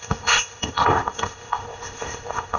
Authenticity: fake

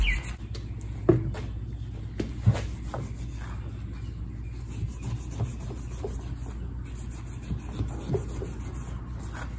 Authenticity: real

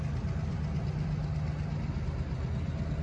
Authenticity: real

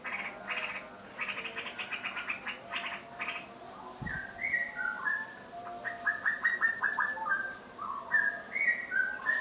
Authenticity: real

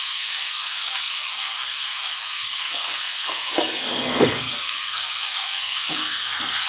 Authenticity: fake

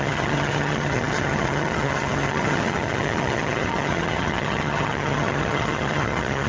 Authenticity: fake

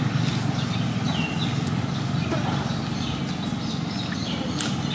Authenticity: real